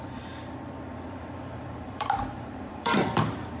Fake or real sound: fake